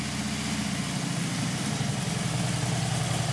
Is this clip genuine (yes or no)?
yes